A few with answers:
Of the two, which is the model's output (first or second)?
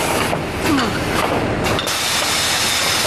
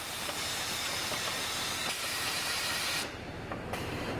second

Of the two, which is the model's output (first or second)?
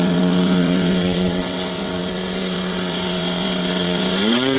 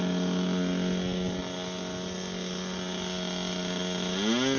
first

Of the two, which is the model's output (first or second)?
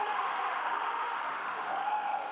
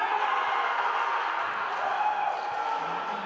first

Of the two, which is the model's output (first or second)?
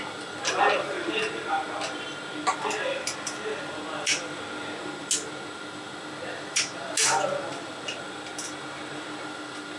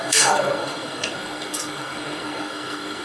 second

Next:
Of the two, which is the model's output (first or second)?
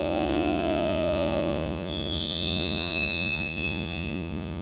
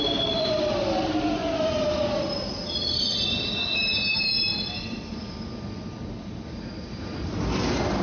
first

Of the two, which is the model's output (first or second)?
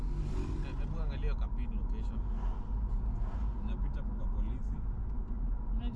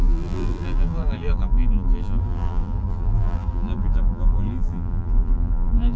second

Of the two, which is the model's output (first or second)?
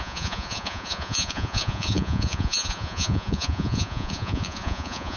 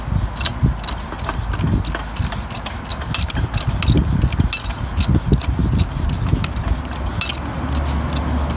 first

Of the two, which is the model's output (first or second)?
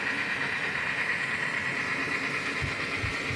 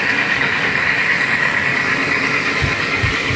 second